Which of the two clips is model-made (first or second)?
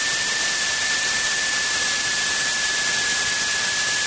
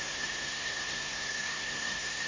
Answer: second